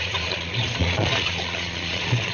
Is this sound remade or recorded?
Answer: remade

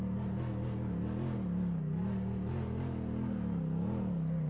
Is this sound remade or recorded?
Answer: recorded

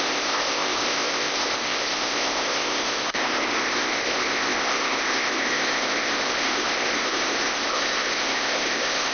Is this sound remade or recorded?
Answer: remade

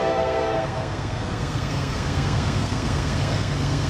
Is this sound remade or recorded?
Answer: remade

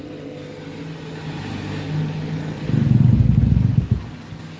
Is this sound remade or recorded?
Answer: recorded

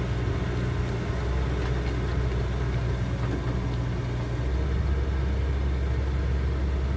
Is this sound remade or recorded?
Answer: recorded